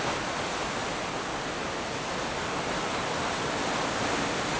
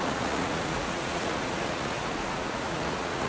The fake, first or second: second